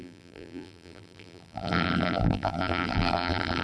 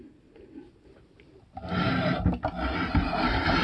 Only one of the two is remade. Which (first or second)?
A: first